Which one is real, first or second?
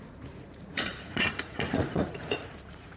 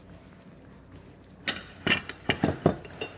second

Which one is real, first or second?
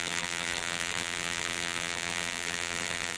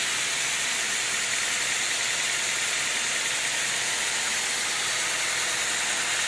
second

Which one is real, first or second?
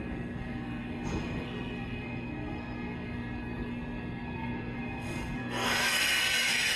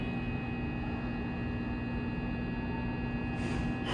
second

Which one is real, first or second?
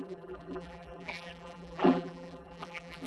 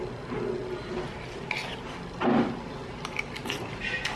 second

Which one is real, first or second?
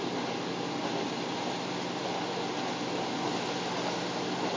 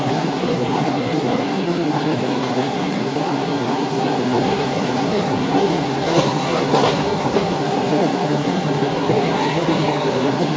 first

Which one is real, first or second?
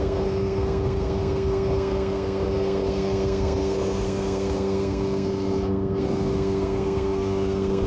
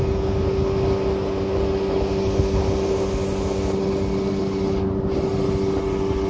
second